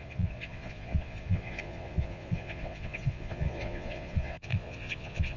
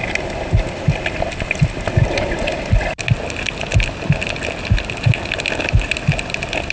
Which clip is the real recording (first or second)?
second